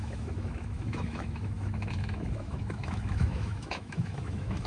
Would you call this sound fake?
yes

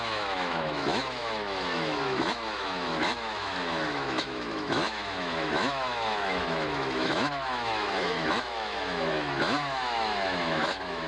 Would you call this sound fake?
yes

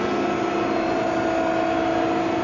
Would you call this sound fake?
no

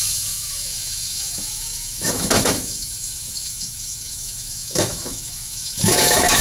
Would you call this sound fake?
yes